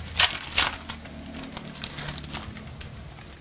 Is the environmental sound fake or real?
real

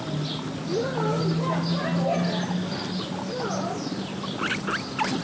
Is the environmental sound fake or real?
real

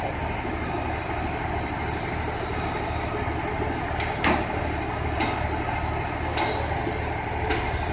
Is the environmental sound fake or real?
real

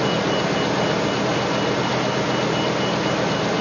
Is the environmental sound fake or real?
real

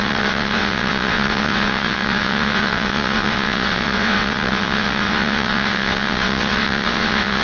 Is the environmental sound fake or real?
fake